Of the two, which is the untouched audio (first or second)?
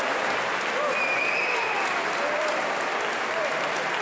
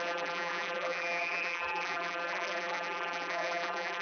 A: first